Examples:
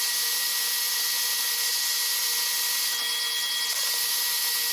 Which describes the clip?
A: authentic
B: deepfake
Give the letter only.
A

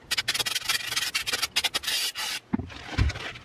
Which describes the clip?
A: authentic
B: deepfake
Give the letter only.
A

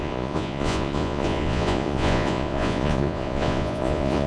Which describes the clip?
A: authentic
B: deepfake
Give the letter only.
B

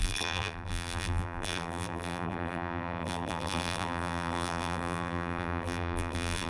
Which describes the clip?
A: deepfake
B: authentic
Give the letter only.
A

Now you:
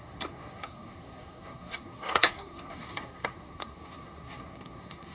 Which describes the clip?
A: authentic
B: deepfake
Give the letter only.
B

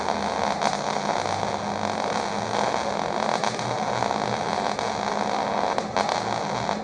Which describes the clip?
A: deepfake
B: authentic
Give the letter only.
B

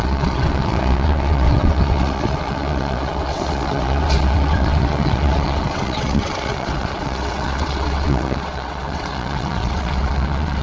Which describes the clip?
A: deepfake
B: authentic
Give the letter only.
A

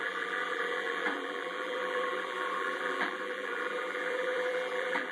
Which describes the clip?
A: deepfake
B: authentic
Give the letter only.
A